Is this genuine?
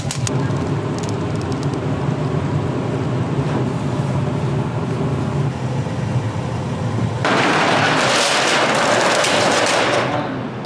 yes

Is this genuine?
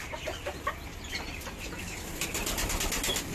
yes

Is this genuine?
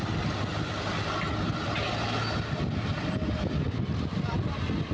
yes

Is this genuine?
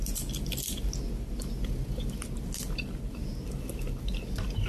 yes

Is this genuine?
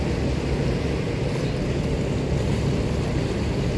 yes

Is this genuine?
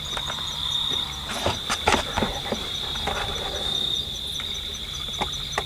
no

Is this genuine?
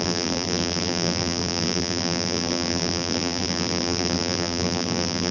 no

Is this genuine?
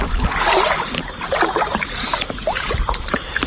no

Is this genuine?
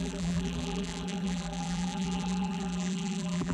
no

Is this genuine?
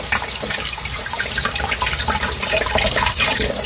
no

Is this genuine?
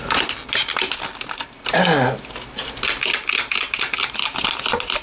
yes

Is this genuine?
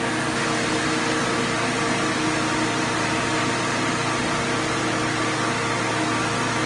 yes